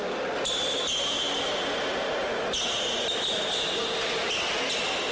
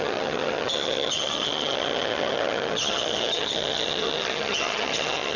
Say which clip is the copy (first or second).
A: second